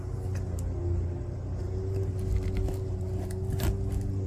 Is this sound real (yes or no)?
yes